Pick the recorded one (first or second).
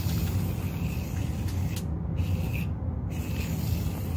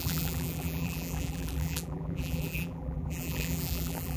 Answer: first